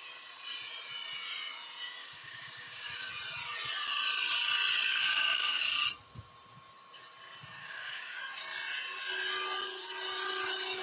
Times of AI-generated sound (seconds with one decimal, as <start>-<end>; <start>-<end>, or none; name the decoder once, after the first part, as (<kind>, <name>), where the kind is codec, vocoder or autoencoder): 2.0-3.1 (codec, DAC); 4.9-5.6; 7.6-8.2